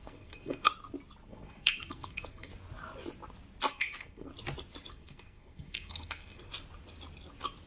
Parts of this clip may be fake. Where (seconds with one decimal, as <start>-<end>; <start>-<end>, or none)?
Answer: 0.0-0.7; 1.3-2.5; 3.7-4.3; 4.9-6.5